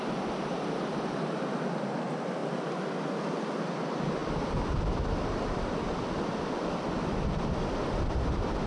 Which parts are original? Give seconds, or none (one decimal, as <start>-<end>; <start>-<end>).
0.0-8.7